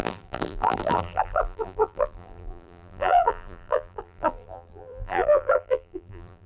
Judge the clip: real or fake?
fake